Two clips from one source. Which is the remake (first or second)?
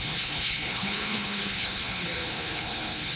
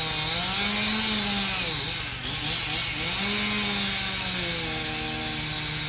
first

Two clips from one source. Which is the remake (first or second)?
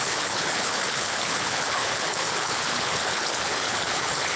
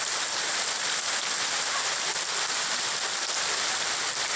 first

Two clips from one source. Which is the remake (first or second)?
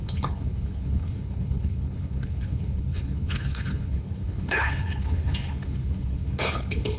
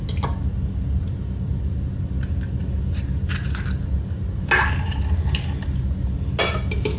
first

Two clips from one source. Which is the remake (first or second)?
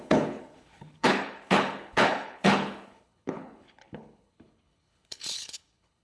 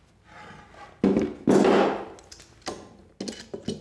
first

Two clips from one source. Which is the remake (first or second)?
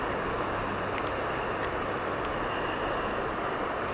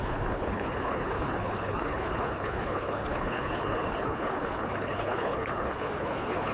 second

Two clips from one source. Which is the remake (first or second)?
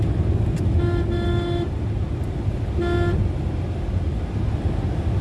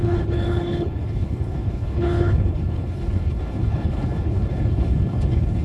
second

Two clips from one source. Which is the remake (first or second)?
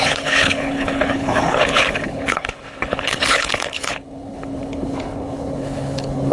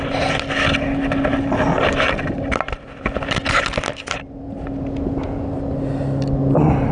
first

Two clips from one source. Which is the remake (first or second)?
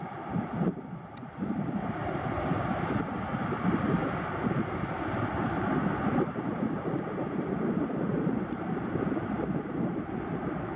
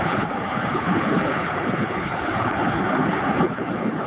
second